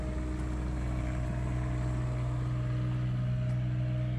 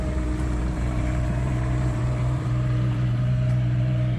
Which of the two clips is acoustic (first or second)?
first